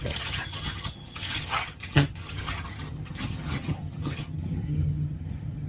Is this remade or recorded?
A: remade